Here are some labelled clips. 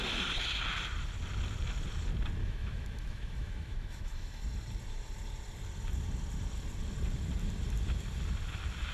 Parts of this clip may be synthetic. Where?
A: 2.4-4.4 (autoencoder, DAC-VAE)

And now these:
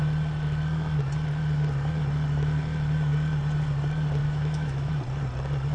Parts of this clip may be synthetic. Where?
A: 4.2-4.9 (autoencoder, DAC-VAE)

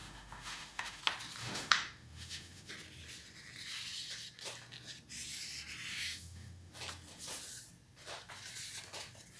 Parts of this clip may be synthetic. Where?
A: 0.0-1.0 (autoencoder, DAC-VAE); 1.4-2.7; 5.9-6.7

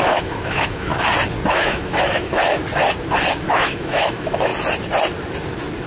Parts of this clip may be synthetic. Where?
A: 0.0-0.9 (autoencoder, DAC-VAE); 1.5-2.4; 3.5-4.5

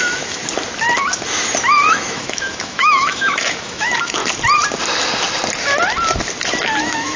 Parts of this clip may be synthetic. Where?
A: 0.0-0.4 (autoencoder, DAC-VAE); 1.9-4.2; 6.8-7.2

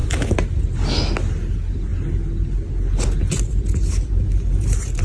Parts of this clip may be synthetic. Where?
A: none

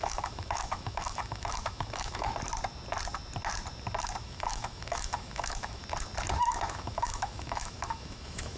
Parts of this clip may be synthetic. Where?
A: 0.0-2.3 (autoencoder, DAC-VAE); 4.2-5.8; 6.4-8.6